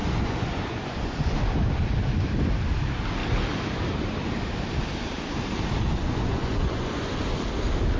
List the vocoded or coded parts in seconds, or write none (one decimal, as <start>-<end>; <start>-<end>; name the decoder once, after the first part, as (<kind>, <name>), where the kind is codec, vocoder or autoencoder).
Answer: 0.0-1.4 (vocoder, Vocos); 6.0-7.1